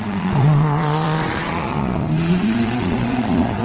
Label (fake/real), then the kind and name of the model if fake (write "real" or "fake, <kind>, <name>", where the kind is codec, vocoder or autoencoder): fake, vocoder, Vocos